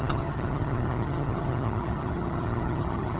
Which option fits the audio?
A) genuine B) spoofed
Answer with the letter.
B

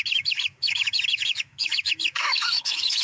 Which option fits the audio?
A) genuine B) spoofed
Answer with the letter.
B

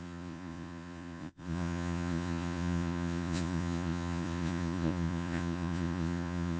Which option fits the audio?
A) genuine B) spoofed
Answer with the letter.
B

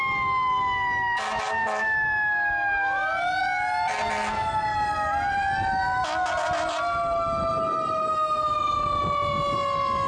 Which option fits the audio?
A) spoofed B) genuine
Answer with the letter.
B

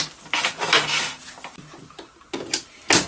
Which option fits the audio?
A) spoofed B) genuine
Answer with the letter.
B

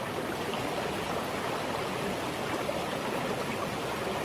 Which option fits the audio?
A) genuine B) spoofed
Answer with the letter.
A